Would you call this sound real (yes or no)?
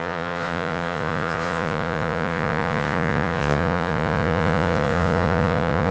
no